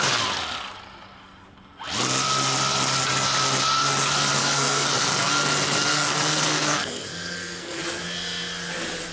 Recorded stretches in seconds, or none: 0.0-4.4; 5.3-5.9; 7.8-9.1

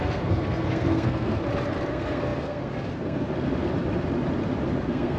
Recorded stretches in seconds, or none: 1.4-1.9; 3.3-4.8

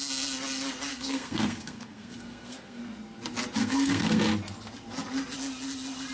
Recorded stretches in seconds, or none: 0.0-0.9; 2.8-3.6; 4.2-6.1